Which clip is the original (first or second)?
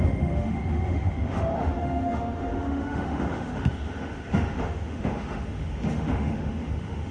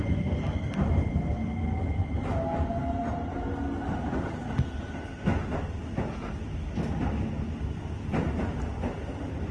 second